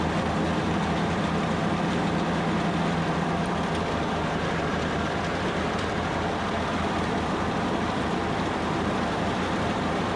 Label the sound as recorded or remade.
remade